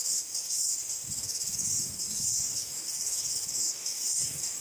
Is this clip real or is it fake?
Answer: fake